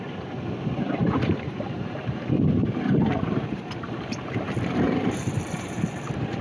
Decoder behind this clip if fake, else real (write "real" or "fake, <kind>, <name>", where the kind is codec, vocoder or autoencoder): fake, vocoder, BigVGAN v2